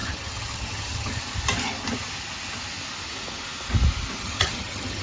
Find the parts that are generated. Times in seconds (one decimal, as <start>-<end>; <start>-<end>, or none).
0.0-1.2; 4.2-5.0